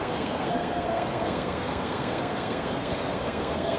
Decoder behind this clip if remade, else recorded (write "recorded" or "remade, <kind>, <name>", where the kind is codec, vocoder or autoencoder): remade, codec, SNAC